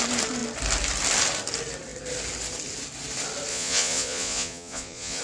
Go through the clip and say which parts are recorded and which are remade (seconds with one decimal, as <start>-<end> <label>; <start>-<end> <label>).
0.0-3.5 recorded; 3.5-5.2 remade